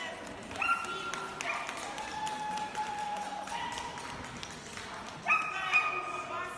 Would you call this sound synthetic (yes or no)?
no